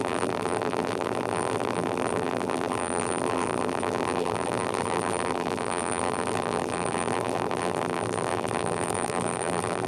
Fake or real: fake